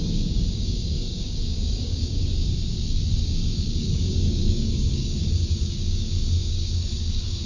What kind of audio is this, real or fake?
fake